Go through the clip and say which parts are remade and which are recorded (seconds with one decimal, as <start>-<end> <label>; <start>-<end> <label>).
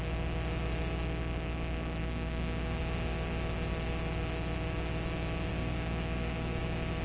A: 0.0-2.0 recorded; 2.0-2.8 remade; 2.8-5.5 recorded; 5.5-6.6 remade; 6.6-7.0 recorded